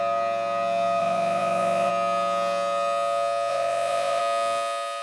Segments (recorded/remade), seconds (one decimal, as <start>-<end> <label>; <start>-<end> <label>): 0.0-1.0 recorded; 1.0-1.9 remade; 1.9-3.5 recorded; 3.5-4.2 remade; 4.2-5.0 recorded